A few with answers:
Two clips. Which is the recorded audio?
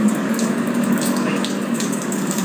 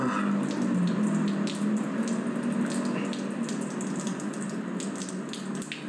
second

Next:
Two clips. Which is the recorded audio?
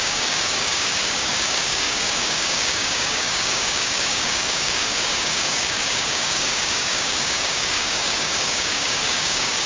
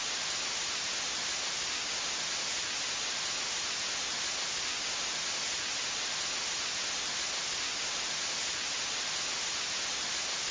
second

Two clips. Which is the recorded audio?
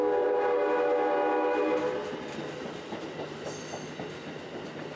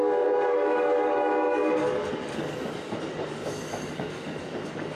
first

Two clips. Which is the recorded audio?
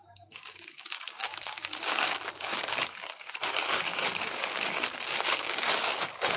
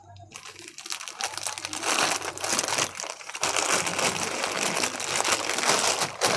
second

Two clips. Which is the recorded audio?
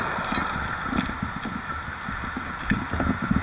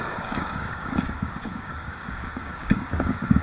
first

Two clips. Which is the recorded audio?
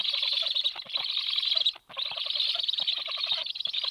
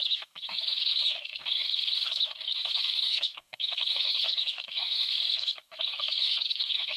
first